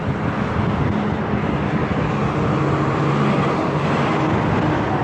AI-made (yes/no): no